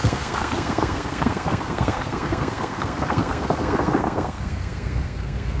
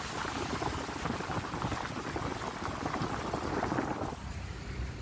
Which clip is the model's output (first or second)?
first